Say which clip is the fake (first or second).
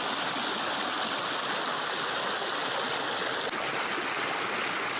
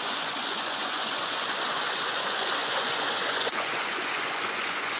second